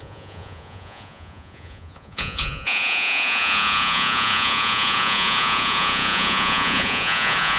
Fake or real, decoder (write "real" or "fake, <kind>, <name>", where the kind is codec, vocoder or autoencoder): fake, vocoder, Vocos